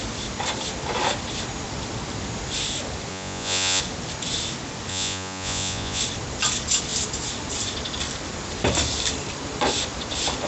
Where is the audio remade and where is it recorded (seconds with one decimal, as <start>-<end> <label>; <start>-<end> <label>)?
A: 0.0-3.1 recorded; 3.1-3.8 remade; 3.8-4.9 recorded; 4.9-6.0 remade; 6.0-10.5 recorded